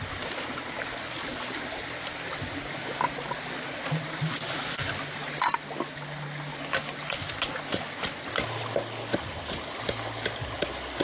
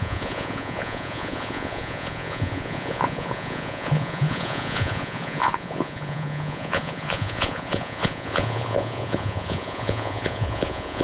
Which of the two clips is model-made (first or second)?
second